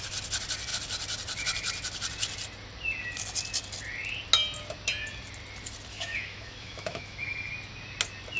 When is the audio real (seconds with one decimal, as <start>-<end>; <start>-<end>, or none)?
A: 0.0-5.9; 7.5-8.4